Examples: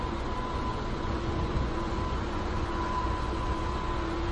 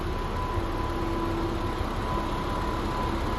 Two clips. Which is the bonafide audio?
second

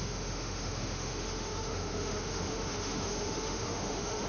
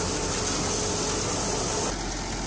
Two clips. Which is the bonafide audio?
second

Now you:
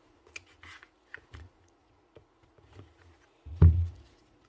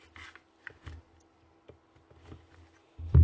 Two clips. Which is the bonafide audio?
second